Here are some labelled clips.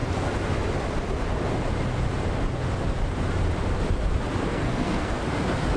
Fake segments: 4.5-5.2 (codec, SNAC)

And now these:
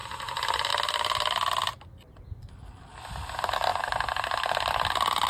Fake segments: 0.0-0.7 (vocoder, BigVGAN v2); 3.7-4.7

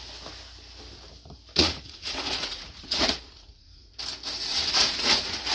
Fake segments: 1.6-3.9 (vocoder, Vocos); 4.4-5.5

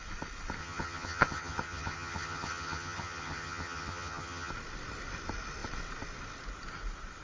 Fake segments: 0.6-4.5 (vocoder, HiFi-GAN)

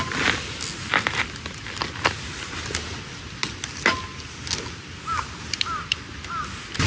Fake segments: none

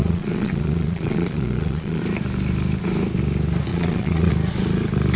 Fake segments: 0.0-2.0 (vocoder, Vocos); 3.7-4.3